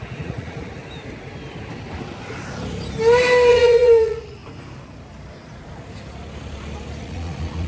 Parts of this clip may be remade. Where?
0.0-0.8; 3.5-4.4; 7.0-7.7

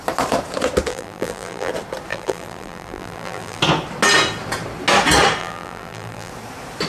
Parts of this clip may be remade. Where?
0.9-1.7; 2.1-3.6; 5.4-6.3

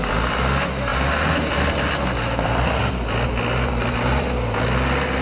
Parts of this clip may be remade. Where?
none

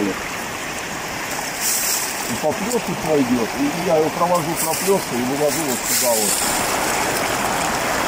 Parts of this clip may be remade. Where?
0.6-5.5

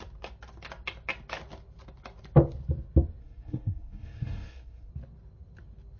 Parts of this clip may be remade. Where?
3.2-4.9

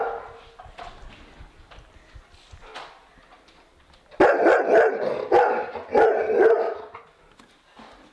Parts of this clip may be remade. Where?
none